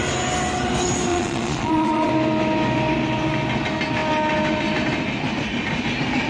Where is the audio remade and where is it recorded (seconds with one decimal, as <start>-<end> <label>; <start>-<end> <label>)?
0.0-1.1 recorded; 1.1-2.1 remade; 2.1-6.3 recorded